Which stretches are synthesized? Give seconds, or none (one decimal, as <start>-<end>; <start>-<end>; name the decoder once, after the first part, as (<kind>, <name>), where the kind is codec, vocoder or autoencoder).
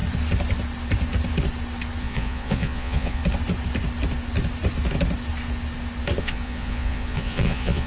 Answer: 2.0-3.2 (vocoder, Vocos); 6.2-7.9